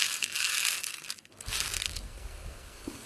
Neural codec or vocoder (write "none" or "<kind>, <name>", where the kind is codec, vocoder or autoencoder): codec, SNAC